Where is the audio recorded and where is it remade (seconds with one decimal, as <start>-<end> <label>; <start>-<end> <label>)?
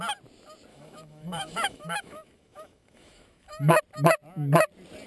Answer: 0.0-0.7 recorded; 0.7-3.8 remade; 3.8-5.1 recorded